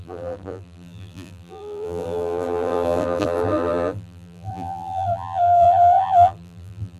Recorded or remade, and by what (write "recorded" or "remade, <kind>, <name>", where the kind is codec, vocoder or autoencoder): remade, vocoder, BigVGAN v2